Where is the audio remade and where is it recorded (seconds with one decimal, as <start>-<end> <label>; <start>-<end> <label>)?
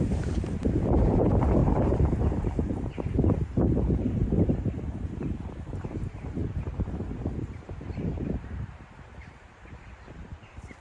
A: 0.0-10.8 remade